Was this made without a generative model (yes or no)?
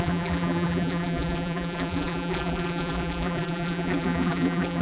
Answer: no